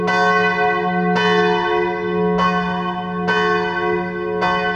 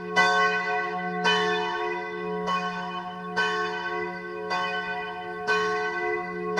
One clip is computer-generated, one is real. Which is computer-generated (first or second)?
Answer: second